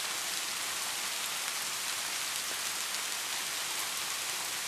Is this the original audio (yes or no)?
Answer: yes